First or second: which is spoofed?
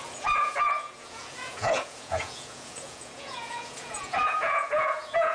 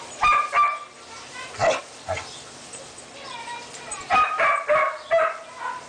first